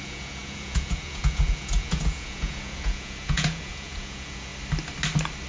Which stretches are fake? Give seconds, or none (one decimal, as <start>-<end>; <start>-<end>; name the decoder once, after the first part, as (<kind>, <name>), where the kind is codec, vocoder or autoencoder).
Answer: 0.0-4.5 (vocoder, Vocos)